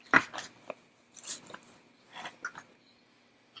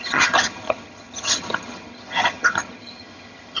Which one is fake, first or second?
second